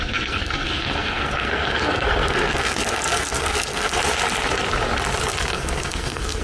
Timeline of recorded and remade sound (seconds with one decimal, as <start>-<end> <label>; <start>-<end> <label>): 0.0-4.0 remade; 4.0-5.5 recorded; 5.5-6.4 remade